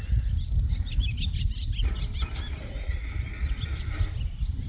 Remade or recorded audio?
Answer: recorded